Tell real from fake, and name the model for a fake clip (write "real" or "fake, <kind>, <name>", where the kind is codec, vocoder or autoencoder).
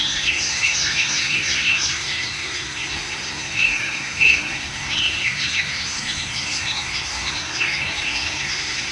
fake, codec, SNAC